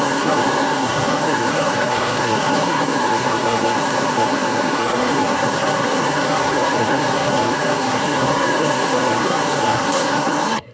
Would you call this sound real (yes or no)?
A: no